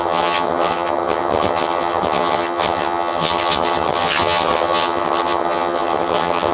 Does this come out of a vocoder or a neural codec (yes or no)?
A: yes